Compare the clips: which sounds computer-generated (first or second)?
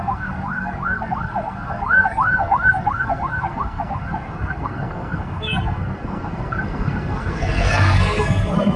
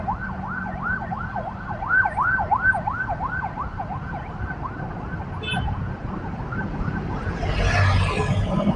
first